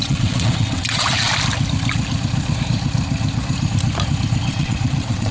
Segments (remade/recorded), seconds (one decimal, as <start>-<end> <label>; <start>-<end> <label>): 0.0-1.3 remade; 1.3-4.5 recorded; 4.5-5.3 remade